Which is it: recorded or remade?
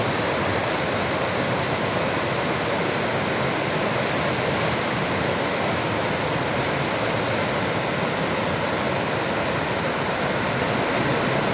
recorded